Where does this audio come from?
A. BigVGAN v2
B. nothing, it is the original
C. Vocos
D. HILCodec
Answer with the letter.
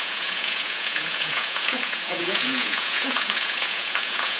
C